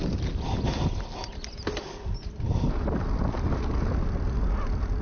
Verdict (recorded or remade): recorded